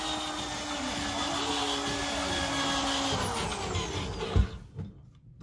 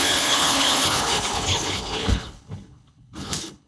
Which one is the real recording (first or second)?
first